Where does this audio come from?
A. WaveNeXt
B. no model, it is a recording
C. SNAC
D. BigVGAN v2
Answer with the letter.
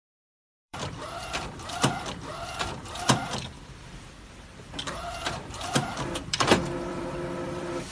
D